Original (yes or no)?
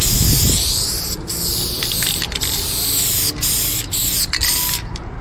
yes